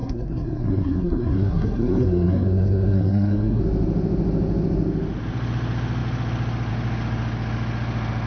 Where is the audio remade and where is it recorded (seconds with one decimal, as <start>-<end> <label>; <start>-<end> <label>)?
0.0-3.6 remade; 3.6-8.3 recorded